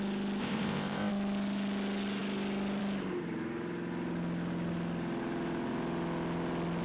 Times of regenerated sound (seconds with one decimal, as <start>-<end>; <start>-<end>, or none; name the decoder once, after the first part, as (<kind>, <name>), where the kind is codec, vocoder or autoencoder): 0.4-1.1 (codec, ZipCodec)